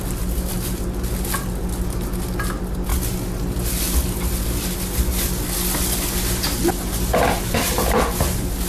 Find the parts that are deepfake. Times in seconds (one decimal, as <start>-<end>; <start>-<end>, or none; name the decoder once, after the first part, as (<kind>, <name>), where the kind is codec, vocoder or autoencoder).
none